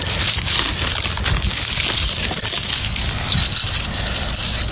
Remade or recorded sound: recorded